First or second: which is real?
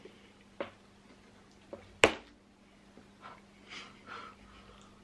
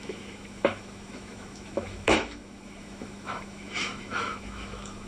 first